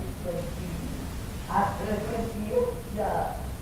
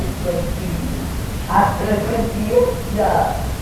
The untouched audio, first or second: first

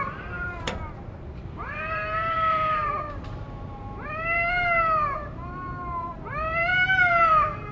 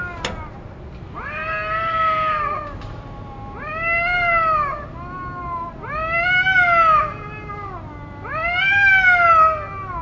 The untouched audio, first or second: second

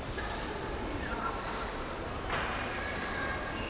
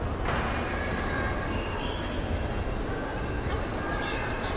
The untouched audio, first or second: second